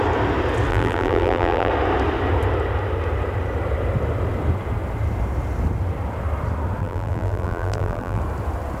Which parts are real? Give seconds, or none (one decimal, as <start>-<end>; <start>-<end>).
0.0-0.7; 1.7-6.8; 8.2-8.8